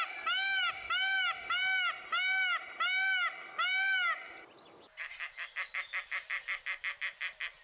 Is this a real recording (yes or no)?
yes